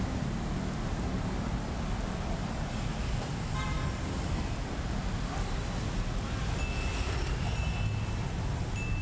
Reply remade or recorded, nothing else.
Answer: recorded